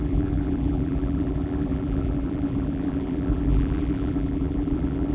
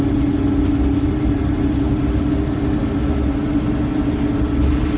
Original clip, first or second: second